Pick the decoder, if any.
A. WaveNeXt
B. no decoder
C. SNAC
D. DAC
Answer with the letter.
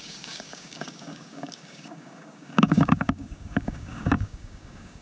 D